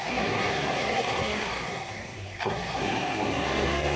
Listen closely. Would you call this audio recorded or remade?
remade